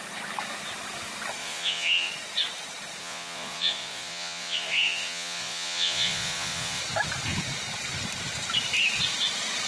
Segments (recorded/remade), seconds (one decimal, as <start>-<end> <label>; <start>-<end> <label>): 0.0-1.4 recorded; 1.4-2.1 remade; 2.1-3.0 recorded; 3.0-6.8 remade; 6.8-9.7 recorded